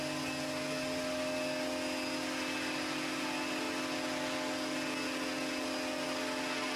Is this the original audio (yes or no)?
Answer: yes